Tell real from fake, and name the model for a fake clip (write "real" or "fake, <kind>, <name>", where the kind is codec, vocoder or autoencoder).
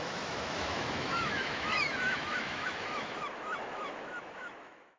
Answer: fake, autoencoder, DAC-VAE